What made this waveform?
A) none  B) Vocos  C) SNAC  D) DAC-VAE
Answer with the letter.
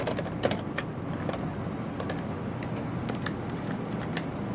A